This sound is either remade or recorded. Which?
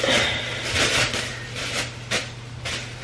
recorded